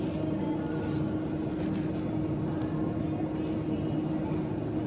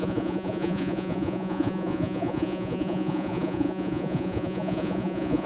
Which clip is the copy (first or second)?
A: second